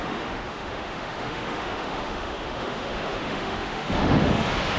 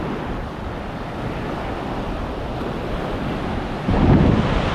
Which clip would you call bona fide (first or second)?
second